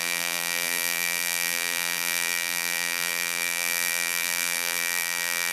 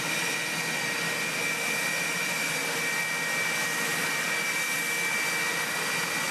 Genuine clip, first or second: second